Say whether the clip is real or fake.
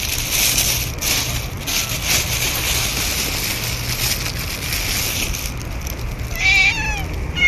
real